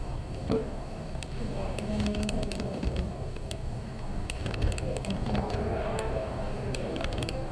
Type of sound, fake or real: fake